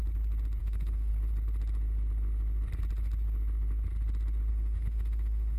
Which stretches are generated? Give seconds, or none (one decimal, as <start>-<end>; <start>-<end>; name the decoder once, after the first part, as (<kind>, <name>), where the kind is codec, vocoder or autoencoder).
0.6-1.1 (autoencoder, DAC-VAE); 4.5-5.6